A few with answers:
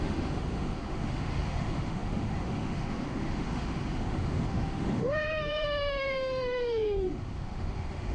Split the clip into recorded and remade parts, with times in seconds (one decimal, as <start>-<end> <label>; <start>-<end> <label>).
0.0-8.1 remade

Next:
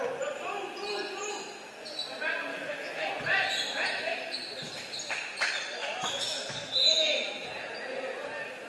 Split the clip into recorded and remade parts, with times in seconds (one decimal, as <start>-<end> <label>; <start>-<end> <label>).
0.0-2.5 recorded; 2.5-3.1 remade; 3.1-5.8 recorded; 5.8-7.5 remade; 7.5-8.7 recorded

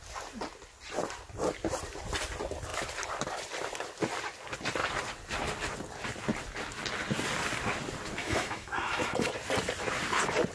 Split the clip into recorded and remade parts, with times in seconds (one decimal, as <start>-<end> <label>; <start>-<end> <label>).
0.0-8.2 recorded; 8.2-9.3 remade; 9.3-10.5 recorded